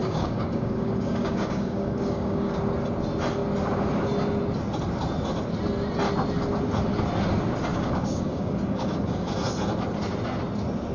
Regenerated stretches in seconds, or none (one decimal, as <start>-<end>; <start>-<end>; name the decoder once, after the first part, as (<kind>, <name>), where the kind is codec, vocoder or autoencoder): 0.0-2.6 (codec, DAC); 7.7-9.3